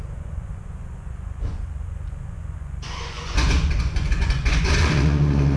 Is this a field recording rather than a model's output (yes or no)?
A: no